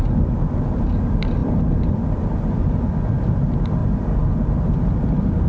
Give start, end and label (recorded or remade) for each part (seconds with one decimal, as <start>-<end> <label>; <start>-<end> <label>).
0.0-5.5 recorded